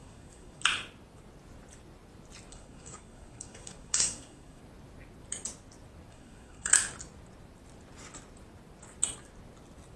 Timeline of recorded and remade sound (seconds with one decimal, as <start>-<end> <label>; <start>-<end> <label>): 0.0-0.6 remade; 0.6-2.5 recorded; 2.5-4.6 remade; 4.6-6.1 recorded; 6.1-6.7 remade; 6.7-10.0 recorded